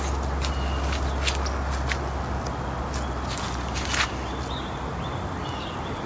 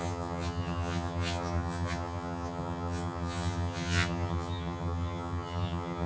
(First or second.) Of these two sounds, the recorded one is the first